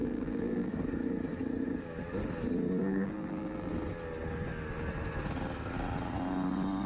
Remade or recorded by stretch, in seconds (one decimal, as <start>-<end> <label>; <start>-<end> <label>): 0.0-0.7 remade; 0.7-2.8 recorded; 2.8-3.7 remade; 3.7-6.9 recorded